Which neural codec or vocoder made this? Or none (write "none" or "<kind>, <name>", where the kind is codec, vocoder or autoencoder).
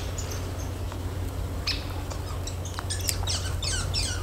none